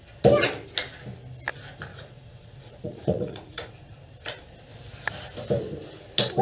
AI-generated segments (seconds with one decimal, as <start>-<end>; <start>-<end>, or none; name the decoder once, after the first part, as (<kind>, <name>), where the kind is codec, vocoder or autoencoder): 1.9-3.7 (vocoder, Vocos)